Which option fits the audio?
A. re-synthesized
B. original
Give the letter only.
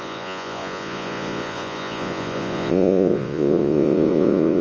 A